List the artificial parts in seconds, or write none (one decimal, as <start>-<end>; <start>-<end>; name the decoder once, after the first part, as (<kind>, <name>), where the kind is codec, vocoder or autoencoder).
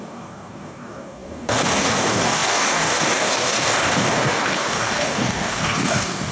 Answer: 0.0-6.3 (codec, DAC)